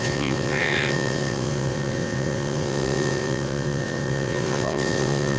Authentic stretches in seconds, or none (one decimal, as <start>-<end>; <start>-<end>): none